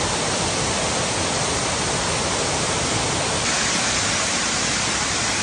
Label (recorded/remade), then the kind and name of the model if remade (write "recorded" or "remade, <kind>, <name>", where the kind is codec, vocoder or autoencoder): recorded